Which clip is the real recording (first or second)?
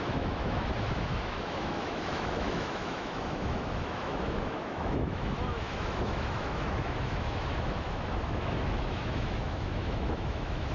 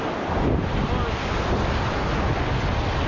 second